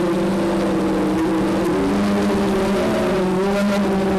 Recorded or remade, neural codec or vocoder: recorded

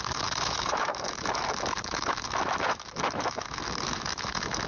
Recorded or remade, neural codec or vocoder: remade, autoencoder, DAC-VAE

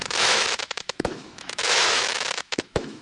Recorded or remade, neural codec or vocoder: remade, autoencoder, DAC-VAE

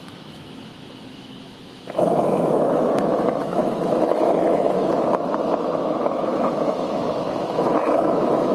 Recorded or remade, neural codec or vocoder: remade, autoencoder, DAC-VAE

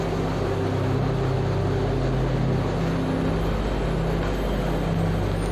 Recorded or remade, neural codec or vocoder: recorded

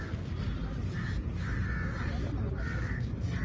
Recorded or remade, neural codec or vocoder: recorded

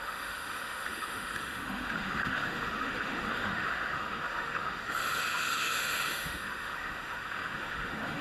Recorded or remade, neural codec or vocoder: remade, autoencoder, DAC-VAE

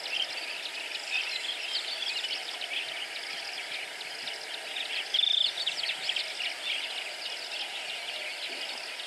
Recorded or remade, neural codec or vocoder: recorded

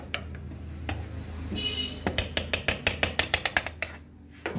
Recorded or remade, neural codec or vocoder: recorded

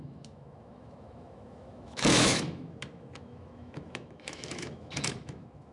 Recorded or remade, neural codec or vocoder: remade, autoencoder, DAC-VAE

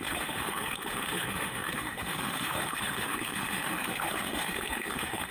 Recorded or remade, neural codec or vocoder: remade, autoencoder, DAC-VAE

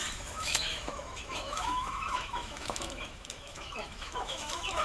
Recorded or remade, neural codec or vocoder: remade, autoencoder, DAC-VAE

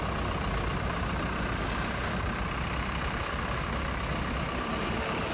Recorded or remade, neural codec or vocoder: recorded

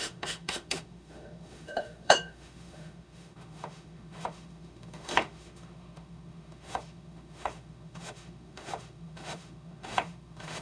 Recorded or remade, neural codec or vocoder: remade, autoencoder, DAC-VAE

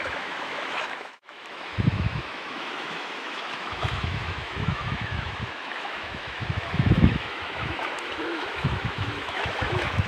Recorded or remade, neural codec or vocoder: remade, autoencoder, DAC-VAE